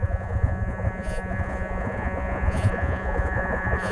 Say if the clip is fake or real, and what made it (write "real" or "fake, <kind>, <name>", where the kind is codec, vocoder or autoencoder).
fake, vocoder, Vocos